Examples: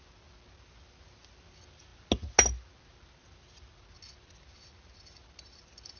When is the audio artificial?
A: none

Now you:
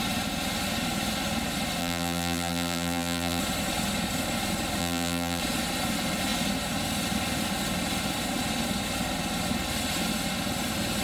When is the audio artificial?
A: 1.8-3.4 (vocoder, BigVGAN v2); 4.8-5.4

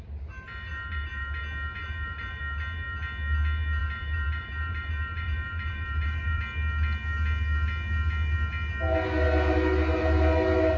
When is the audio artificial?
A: 0.7-1.4 (vocoder, BigVGAN v2); 1.8-2.4; 3.8-6.4

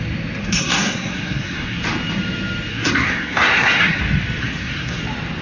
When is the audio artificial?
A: 0.4-1.8 (codec, SNAC); 2.7-4.0; 4.4-5.0

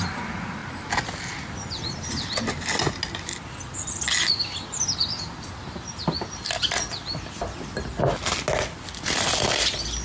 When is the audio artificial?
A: none

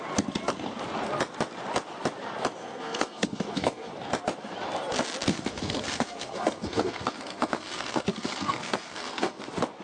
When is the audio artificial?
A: 2.6-3.9 (codec, SNAC); 5.3-9.4